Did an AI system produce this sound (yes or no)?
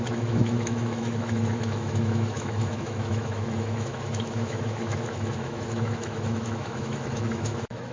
yes